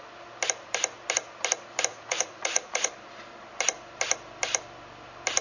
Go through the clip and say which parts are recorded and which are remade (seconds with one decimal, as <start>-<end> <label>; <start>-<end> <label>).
0.0-1.9 recorded; 1.9-2.9 remade; 2.9-5.4 recorded